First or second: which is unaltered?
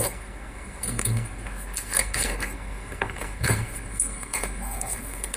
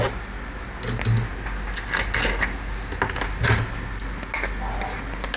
second